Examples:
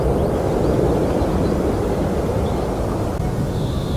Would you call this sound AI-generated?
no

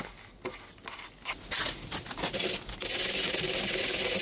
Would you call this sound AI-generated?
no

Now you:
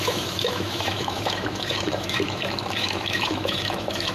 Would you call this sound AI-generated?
yes